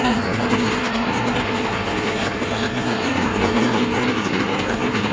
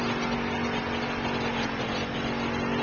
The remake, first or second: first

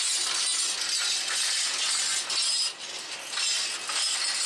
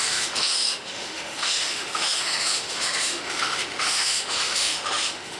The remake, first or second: second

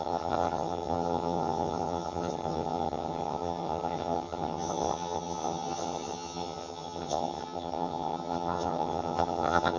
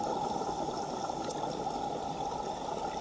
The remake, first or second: first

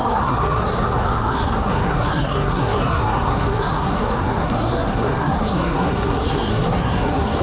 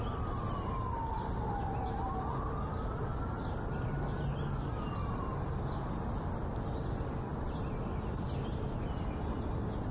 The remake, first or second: first